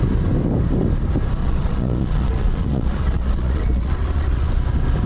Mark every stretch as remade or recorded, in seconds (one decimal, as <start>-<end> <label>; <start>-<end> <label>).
0.0-1.4 recorded; 1.4-4.5 remade; 4.5-5.1 recorded